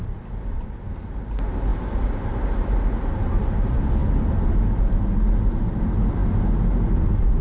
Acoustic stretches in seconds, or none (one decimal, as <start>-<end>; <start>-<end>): 0.0-7.4